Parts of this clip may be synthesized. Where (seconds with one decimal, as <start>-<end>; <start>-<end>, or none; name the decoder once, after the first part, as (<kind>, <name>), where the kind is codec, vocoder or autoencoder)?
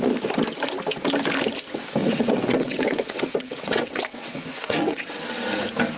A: 2.0-5.2 (vocoder, WaveNeXt)